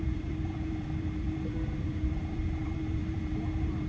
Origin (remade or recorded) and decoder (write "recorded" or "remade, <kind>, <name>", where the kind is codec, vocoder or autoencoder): remade, vocoder, BigVGAN v2